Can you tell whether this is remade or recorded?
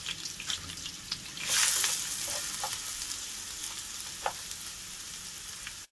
recorded